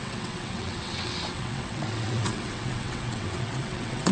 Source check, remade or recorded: remade